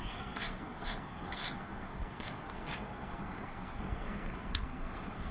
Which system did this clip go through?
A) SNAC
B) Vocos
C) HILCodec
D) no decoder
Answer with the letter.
A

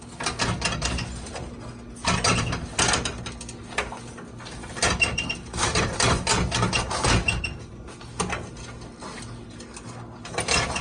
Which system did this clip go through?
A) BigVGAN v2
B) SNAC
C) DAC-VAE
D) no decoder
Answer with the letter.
D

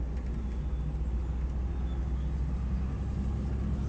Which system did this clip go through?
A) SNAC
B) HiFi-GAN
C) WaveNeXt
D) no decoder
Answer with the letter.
D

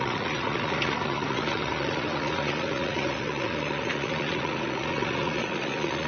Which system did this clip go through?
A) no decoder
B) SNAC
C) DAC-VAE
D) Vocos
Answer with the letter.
D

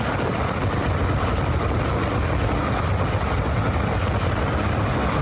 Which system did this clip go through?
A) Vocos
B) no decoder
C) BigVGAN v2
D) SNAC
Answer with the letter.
B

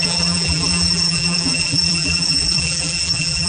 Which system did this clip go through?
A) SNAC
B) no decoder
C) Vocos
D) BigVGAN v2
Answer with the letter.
D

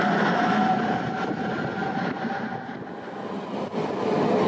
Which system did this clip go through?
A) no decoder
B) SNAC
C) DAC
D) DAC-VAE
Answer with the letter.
A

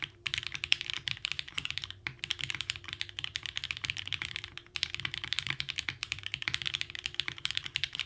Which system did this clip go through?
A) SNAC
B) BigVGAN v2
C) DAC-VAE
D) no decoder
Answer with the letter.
B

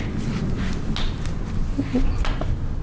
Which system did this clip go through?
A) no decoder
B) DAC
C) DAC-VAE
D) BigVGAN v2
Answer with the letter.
A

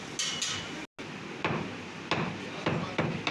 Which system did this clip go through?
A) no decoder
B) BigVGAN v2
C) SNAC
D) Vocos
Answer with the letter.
A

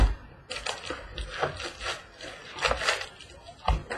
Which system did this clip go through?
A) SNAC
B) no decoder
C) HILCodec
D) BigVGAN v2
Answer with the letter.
B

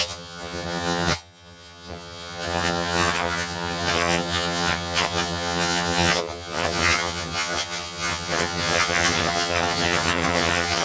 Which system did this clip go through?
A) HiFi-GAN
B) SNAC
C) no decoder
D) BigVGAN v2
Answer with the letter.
A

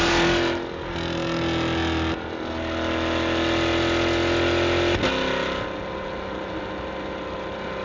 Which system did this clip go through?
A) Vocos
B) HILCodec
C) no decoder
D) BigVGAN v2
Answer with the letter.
C